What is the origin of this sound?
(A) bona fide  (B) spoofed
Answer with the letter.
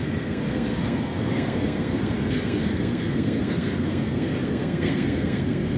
B